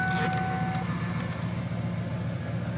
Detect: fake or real real